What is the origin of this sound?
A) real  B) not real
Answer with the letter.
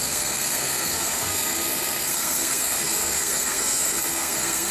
B